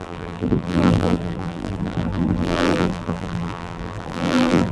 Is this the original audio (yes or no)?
no